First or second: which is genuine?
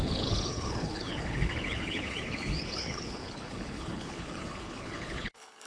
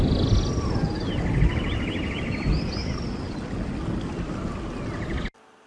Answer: second